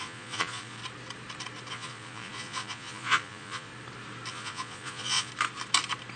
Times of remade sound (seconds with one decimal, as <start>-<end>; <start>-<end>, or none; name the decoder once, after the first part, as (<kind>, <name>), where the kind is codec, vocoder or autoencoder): 0.0-0.8 (vocoder, Vocos); 1.7-3.7; 4.3-5.3